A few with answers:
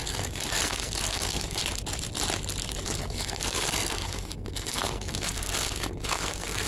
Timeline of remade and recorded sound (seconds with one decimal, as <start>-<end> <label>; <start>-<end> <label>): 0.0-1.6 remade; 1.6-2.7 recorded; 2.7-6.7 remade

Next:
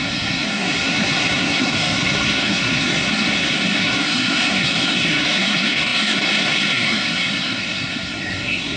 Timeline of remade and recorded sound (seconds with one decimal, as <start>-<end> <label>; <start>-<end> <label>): 0.0-8.8 remade

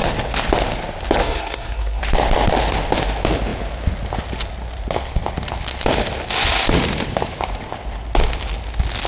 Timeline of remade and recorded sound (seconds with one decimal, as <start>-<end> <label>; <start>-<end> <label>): 0.0-1.2 recorded; 1.2-2.0 remade; 2.0-9.1 recorded

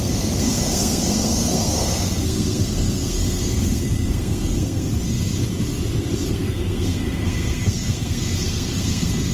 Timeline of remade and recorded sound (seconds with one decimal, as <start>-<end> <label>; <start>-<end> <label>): 0.0-4.9 remade; 4.9-6.3 recorded; 6.3-9.3 remade

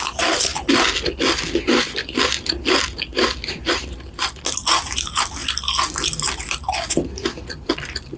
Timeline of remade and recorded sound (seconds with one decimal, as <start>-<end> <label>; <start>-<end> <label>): 0.0-8.2 recorded